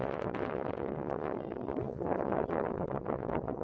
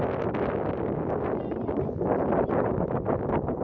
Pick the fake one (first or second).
first